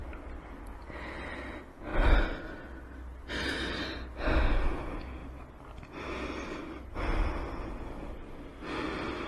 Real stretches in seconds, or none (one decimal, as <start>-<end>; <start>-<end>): 0.0-9.3